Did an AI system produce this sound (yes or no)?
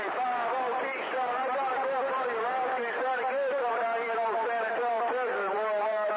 yes